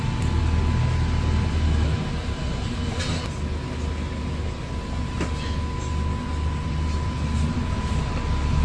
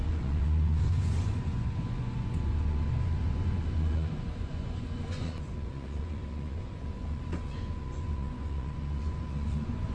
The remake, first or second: second